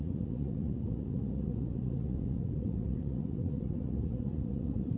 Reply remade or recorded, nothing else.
remade